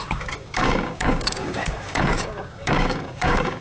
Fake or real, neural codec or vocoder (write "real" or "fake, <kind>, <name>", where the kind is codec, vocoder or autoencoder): fake, codec, DAC